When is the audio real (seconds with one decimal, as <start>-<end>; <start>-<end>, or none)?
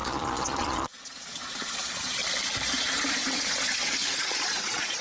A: 2.2-2.8